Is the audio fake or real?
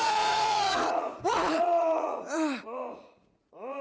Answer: fake